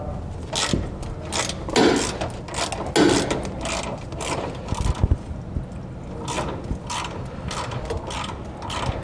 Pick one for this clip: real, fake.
real